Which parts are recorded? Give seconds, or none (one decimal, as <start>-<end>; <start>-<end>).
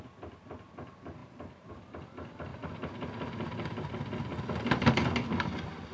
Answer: 0.0-1.2; 1.7-5.9